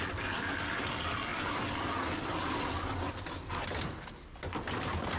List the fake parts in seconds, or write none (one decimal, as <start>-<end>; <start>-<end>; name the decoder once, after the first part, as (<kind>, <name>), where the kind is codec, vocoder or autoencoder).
none